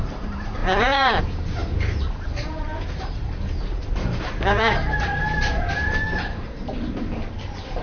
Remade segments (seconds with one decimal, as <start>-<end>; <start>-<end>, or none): 0.0-7.8